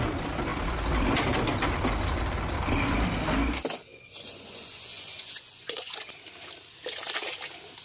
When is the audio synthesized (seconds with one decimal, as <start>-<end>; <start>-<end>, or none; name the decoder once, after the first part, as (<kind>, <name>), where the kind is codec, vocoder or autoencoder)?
3.9-6.1 (vocoder, Vocos)